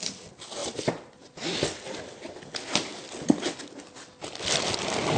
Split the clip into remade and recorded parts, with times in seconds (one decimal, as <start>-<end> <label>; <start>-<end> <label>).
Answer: 0.0-5.2 recorded

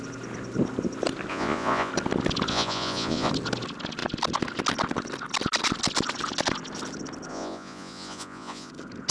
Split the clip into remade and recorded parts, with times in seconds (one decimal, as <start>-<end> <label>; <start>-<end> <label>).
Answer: 0.0-1.3 recorded; 1.3-1.9 remade; 1.9-2.5 recorded; 2.5-3.3 remade; 3.3-7.3 recorded; 7.3-8.7 remade; 8.7-9.1 recorded

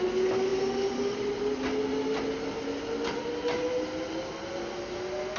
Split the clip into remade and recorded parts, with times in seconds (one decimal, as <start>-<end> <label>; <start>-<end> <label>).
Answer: 0.0-5.4 recorded

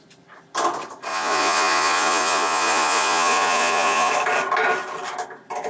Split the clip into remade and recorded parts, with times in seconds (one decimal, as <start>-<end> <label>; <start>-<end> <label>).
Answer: 0.0-1.1 recorded; 1.1-4.1 remade; 4.1-5.7 recorded

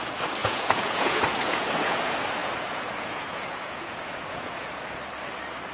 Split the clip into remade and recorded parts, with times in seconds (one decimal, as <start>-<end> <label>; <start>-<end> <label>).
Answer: 0.0-0.4 recorded; 0.4-2.0 remade; 2.0-2.4 recorded; 2.4-5.0 remade; 5.0-5.7 recorded

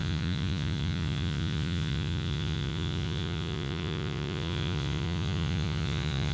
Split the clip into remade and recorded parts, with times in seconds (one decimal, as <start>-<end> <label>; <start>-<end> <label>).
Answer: 0.0-6.3 remade